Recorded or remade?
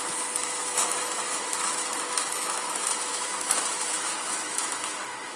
remade